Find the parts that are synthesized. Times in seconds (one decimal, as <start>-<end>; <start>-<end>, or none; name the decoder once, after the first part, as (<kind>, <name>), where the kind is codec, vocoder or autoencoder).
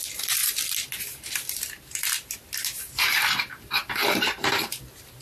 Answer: 4.0-4.7 (vocoder, BigVGAN v2)